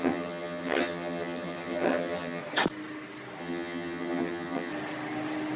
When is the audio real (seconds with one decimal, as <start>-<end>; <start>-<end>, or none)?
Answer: 2.4-3.4; 4.7-5.6